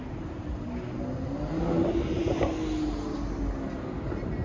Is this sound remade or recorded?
recorded